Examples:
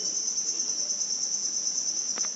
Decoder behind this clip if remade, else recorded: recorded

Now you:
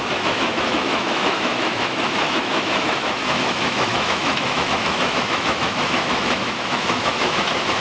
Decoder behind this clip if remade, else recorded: remade, autoencoder, DAC-VAE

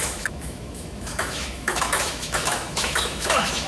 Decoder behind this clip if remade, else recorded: remade, autoencoder, DAC-VAE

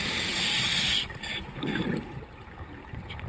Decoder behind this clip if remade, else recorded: recorded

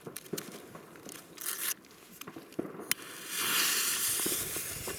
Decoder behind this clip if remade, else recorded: recorded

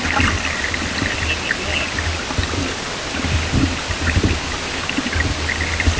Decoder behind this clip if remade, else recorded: recorded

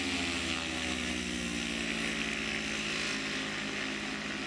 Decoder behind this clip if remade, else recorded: recorded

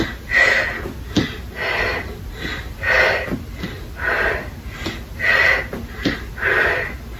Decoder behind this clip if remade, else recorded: recorded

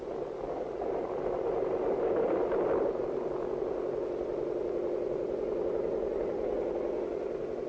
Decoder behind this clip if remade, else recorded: recorded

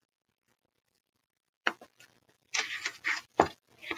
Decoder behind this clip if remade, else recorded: recorded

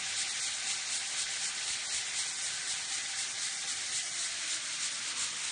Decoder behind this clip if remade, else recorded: recorded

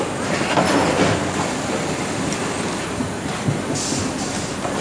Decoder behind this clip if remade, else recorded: recorded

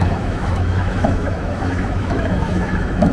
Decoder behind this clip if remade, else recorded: remade, autoencoder, DAC-VAE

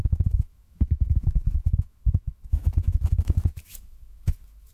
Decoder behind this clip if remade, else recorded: remade, autoencoder, DAC-VAE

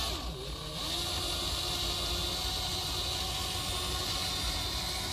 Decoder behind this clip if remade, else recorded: recorded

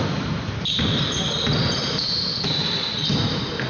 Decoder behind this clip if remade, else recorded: recorded